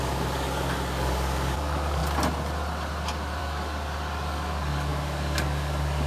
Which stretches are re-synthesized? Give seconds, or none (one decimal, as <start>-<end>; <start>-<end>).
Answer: 0.0-2.0; 3.4-6.1